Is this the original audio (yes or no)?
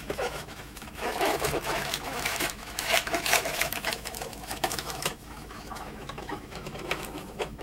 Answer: no